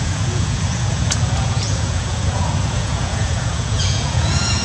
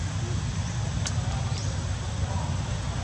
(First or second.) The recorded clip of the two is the second